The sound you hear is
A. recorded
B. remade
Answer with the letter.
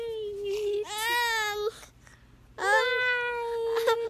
A